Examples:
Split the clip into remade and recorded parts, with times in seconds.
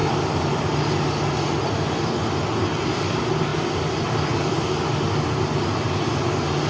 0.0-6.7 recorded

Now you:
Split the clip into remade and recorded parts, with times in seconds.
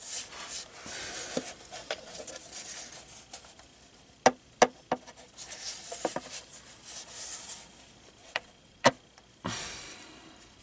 0.0-8.2 recorded; 8.2-8.9 remade; 8.9-10.6 recorded